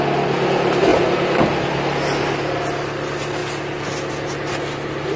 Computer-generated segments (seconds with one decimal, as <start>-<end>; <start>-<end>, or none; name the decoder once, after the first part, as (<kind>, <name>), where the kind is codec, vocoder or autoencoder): none